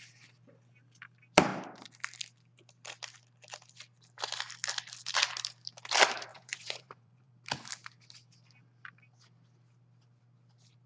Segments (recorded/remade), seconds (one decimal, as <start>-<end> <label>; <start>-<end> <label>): 0.0-6.3 recorded; 6.3-7.3 remade; 7.3-10.9 recorded

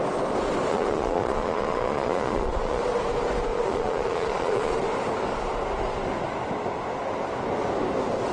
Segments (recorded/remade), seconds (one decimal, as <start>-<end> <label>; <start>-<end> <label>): 0.0-0.7 recorded; 0.7-2.8 remade; 2.8-3.5 recorded; 3.5-4.7 remade; 4.7-8.3 recorded

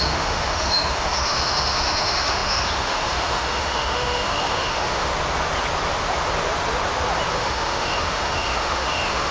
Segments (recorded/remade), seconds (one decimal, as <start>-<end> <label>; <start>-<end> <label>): 0.0-5.1 remade; 5.1-7.3 recorded; 7.3-9.3 remade

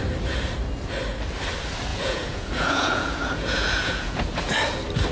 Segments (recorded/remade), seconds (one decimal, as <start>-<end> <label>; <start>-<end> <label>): 0.0-1.9 recorded; 1.9-4.4 remade; 4.4-5.1 recorded

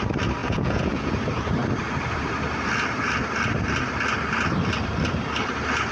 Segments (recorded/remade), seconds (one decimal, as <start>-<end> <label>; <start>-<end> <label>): 0.0-0.4 recorded; 0.4-1.1 remade; 1.1-5.9 recorded

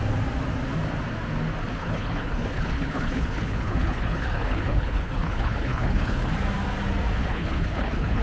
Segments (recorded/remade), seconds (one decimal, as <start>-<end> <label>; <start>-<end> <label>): 0.0-1.8 recorded; 1.8-6.3 remade; 6.3-7.2 recorded; 7.2-8.2 remade

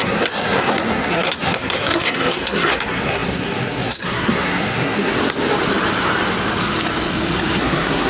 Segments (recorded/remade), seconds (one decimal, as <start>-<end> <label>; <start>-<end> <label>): 0.0-5.1 remade; 5.1-7.6 recorded; 7.6-8.1 remade